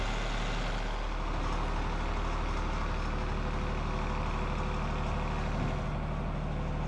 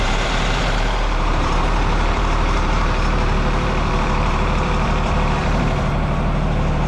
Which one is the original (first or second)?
first